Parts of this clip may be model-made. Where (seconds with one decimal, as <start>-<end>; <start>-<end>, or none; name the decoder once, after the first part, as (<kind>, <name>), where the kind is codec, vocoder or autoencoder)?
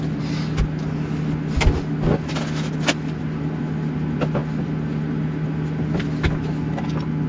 none